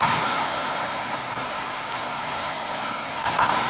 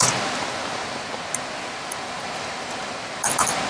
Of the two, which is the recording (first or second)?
second